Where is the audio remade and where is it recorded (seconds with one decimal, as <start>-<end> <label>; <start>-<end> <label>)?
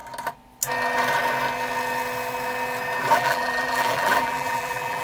0.0-3.0 recorded; 3.0-5.0 remade